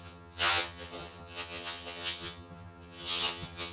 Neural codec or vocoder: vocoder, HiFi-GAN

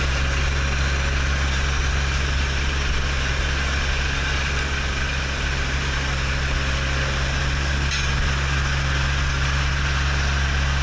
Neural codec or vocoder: none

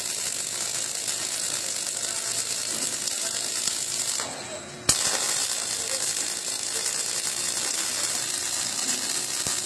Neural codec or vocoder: none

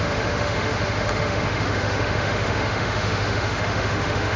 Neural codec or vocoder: autoencoder, DAC-VAE